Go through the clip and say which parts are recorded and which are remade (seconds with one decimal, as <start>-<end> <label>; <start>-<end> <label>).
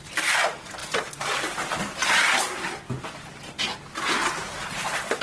0.0-5.2 recorded